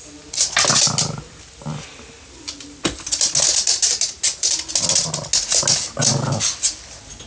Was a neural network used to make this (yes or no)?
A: no